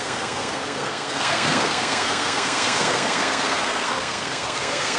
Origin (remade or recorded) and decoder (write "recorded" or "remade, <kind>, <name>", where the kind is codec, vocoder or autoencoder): remade, codec, SNAC